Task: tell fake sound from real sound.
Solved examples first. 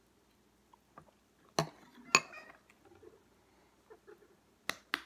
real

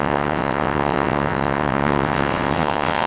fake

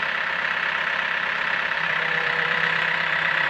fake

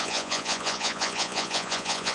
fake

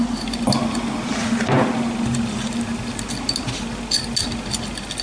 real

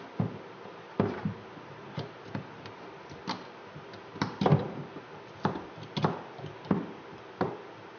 real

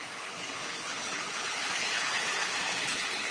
fake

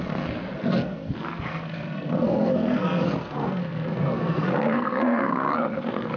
fake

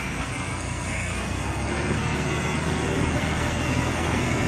fake